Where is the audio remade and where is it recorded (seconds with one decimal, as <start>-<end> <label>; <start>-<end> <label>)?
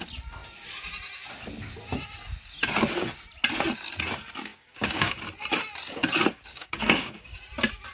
0.0-4.5 recorded; 4.5-5.2 remade; 5.2-6.5 recorded; 6.5-7.4 remade; 7.4-7.9 recorded